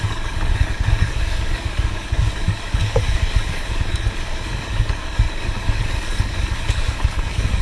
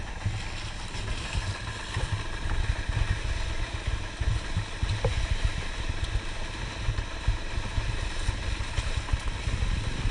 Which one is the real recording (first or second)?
second